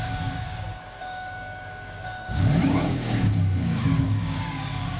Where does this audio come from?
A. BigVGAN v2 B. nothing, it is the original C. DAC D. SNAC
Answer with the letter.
C